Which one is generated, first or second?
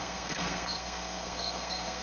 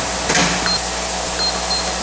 first